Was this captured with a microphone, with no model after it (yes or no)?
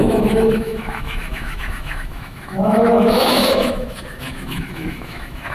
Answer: no